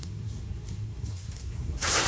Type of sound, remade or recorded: remade